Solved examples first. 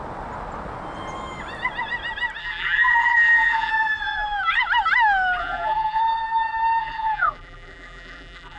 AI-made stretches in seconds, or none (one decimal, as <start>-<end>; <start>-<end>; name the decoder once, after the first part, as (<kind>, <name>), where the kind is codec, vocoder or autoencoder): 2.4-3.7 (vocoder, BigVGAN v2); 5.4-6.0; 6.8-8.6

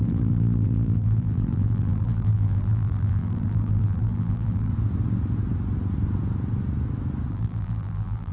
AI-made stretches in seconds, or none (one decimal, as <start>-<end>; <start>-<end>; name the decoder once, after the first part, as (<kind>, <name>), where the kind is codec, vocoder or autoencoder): 0.0-4.7 (vocoder, BigVGAN v2); 7.3-8.3

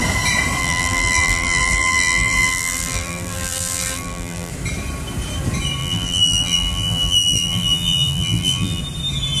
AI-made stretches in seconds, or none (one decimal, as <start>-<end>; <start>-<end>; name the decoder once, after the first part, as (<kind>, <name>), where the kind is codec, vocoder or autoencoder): 0.6-4.5 (vocoder, BigVGAN v2); 5.8-8.8

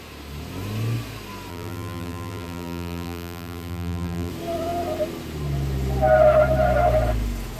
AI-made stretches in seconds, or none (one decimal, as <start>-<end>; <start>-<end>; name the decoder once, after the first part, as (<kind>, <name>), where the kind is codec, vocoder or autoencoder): 1.5-4.3 (vocoder, BigVGAN v2)

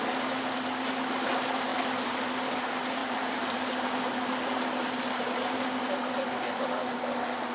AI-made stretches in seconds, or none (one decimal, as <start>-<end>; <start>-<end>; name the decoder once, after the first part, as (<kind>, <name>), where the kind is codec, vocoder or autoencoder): 1.7-2.3 (vocoder, BigVGAN v2); 3.0-3.6

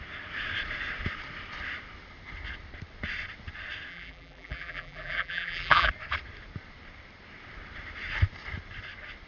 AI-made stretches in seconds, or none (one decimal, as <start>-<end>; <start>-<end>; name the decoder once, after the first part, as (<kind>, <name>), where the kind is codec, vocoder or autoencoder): 3.9-5.9 (vocoder, BigVGAN v2)

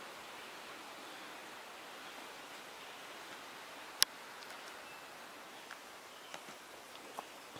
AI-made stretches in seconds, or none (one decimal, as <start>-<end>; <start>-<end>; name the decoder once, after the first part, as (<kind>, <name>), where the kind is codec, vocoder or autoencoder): 6.3-6.9 (vocoder, BigVGAN v2)

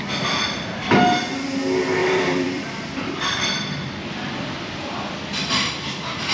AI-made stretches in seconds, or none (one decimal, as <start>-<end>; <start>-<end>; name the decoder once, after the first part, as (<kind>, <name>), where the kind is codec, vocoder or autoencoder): 2.0-5.7 (vocoder, BigVGAN v2)